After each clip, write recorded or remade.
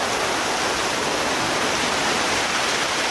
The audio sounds recorded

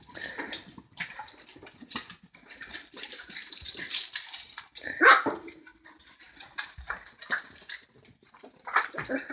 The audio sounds recorded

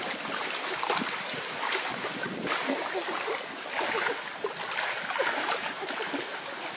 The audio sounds recorded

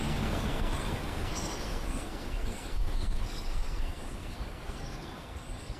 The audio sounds remade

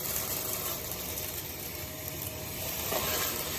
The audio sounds remade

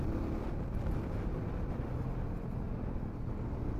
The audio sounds recorded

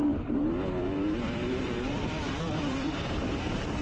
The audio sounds remade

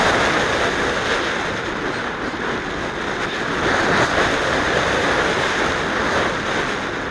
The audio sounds recorded